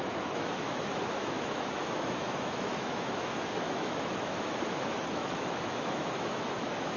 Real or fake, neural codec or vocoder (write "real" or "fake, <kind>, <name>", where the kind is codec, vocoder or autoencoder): fake, autoencoder, DAC-VAE